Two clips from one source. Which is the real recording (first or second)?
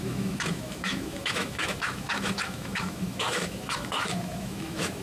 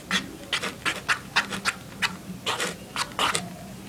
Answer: second